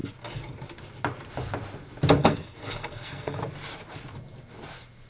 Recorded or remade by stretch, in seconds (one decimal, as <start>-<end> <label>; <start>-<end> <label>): 0.0-2.2 recorded; 2.2-3.4 remade; 3.4-5.1 recorded